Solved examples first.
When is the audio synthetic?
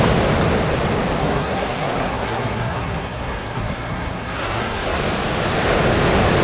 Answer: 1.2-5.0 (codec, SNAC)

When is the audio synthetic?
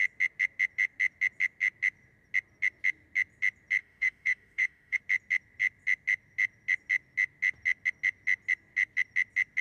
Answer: 3.8-5.0 (autoencoder, DAC-VAE)